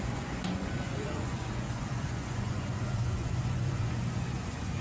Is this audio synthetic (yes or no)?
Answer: yes